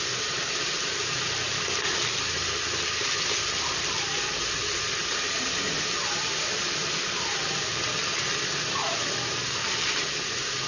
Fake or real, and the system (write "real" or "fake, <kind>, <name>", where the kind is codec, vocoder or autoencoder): real